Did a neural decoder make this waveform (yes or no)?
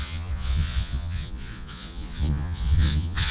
yes